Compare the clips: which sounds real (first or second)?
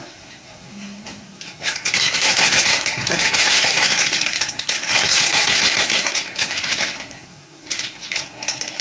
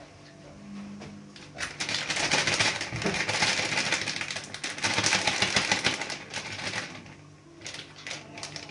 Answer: second